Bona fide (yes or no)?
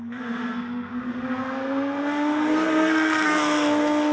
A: no